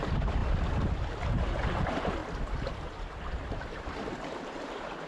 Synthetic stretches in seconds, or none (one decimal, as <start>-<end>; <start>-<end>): 0.0-0.4; 1.7-2.2; 2.7-5.1